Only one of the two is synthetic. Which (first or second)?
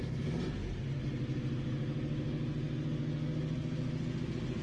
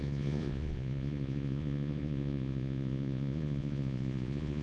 second